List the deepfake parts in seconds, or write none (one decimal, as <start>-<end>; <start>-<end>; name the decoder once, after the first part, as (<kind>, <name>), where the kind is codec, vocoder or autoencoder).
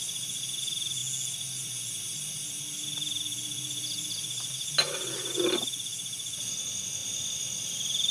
none